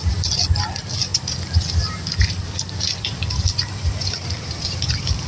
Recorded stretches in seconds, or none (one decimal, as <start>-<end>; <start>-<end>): 0.0-5.3

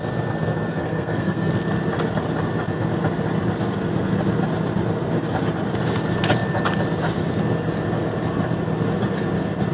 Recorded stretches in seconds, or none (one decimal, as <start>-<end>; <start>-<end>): 0.0-0.7; 1.5-9.7

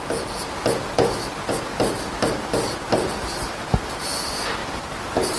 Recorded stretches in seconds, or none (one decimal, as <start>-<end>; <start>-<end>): 0.0-4.6

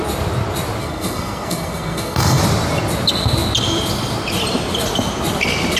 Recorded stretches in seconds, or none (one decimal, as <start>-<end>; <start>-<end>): 0.0-0.8; 2.4-5.8

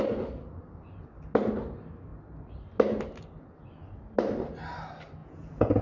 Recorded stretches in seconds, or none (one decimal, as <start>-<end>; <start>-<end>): 0.0-5.2

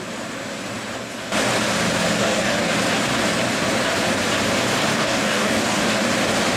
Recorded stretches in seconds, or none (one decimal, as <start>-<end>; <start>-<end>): 0.0-2.2; 2.7-4.9; 5.8-6.6

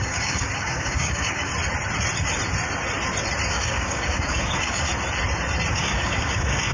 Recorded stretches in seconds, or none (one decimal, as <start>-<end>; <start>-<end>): 1.5-3.5; 4.9-5.7